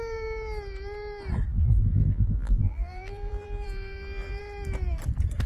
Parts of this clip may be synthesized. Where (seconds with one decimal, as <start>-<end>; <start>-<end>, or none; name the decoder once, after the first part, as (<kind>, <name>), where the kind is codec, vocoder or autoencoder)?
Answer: 1.5-4.4 (vocoder, BigVGAN v2)